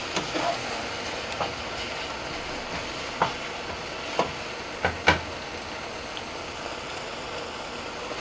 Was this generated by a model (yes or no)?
no